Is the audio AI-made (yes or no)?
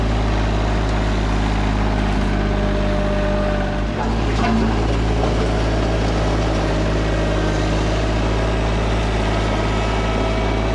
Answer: no